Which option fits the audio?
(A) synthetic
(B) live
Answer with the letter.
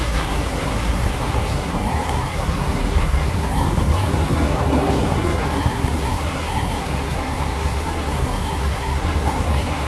A